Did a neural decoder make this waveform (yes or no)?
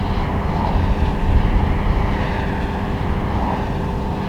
no